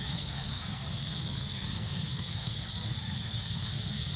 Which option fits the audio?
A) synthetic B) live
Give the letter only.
A